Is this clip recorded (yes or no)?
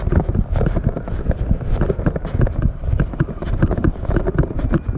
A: yes